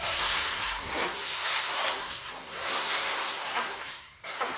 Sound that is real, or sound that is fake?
fake